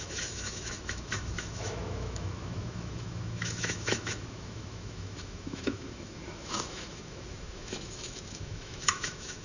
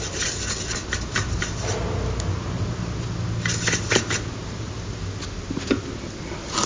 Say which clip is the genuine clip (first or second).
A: second